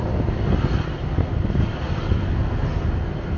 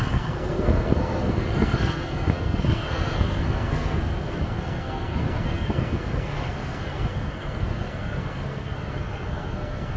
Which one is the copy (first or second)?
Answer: second